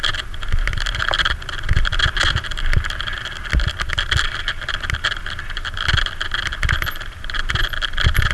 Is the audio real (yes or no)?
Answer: yes